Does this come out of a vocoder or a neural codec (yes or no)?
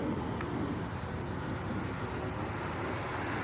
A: no